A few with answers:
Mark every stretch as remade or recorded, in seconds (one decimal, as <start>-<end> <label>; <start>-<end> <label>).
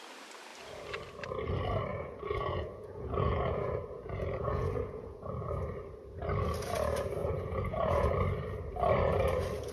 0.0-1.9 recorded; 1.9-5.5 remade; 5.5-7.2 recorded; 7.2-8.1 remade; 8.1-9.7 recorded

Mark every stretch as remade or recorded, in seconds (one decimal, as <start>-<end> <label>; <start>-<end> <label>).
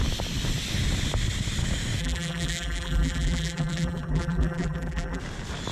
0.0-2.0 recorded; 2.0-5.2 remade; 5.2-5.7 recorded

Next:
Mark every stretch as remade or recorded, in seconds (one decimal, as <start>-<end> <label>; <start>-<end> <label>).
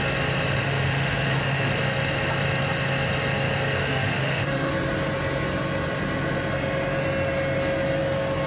0.0-0.6 recorded; 0.6-1.7 remade; 1.7-3.8 recorded; 3.8-4.7 remade; 4.7-8.5 recorded